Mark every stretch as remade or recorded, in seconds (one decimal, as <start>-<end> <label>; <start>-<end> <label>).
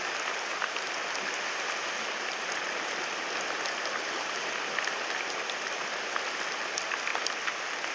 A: 0.0-7.9 recorded